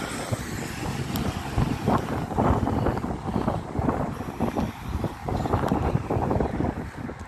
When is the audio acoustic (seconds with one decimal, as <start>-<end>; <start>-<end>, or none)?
0.0-5.2; 6.8-7.3